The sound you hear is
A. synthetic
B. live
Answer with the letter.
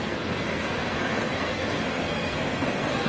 A